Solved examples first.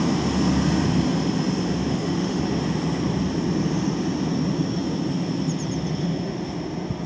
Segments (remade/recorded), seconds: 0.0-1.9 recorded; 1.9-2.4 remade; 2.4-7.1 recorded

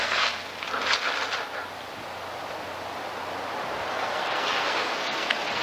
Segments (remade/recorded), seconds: 0.0-0.5 remade; 0.5-3.9 recorded; 3.9-5.6 remade

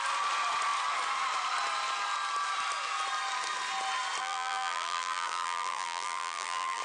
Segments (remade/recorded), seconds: 0.0-4.2 recorded; 4.2-6.8 remade

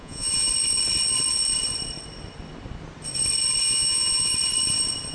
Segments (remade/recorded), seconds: 0.0-0.5 remade; 0.5-3.6 recorded; 3.6-4.3 remade; 4.3-5.1 recorded

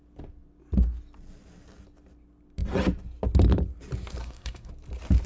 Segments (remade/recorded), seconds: 0.0-4.2 recorded; 4.2-4.7 remade; 4.7-5.3 recorded

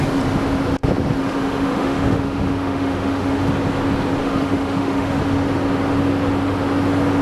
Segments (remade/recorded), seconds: 0.0-1.2 recorded; 1.2-3.4 remade; 3.4-4.2 recorded; 4.2-5.2 remade; 5.2-7.2 recorded

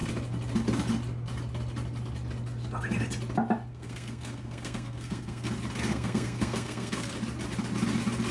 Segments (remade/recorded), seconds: 0.0-3.7 recorded; 3.7-5.5 remade; 5.5-5.9 recorded; 5.9-7.1 remade; 7.1-8.3 recorded

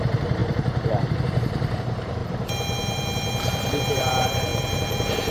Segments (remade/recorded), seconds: 0.0-5.3 remade